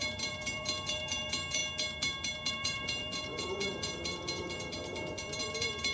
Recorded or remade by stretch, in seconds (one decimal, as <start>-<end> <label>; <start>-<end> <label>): 0.0-1.6 remade; 1.6-2.5 recorded; 2.5-5.9 remade